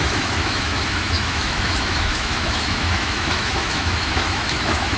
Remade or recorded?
remade